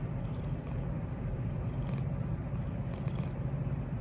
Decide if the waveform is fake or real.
real